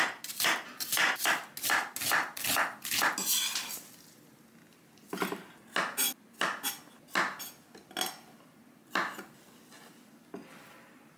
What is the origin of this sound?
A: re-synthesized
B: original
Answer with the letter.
B